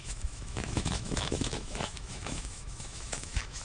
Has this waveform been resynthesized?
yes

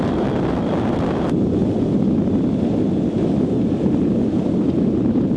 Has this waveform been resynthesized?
no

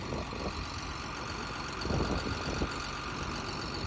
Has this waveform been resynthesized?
no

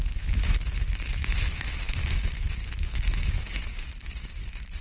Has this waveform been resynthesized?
yes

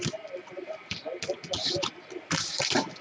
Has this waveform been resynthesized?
no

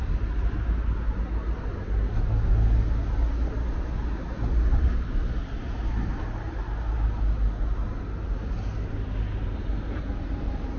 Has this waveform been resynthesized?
no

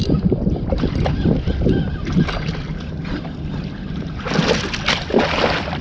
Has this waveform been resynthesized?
no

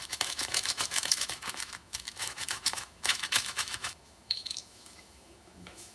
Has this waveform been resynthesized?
yes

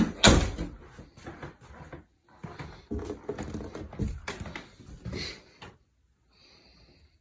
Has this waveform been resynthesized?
no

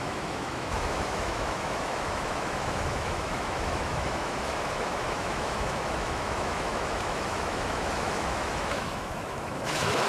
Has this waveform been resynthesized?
yes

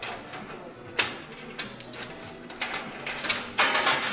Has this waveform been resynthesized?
no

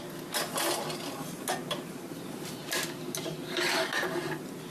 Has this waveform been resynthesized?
no